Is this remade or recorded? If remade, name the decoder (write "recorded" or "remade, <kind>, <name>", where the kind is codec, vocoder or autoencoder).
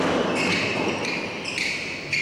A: recorded